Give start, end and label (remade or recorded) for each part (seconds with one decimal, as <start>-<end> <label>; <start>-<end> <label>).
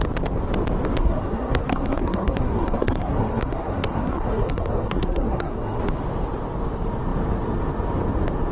0.0-1.0 recorded; 1.0-5.8 remade; 5.8-8.5 recorded